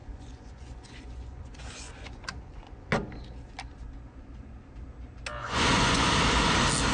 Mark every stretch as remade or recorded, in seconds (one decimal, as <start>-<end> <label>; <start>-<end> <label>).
0.0-2.9 remade; 2.9-5.4 recorded; 5.4-6.1 remade; 6.1-6.9 recorded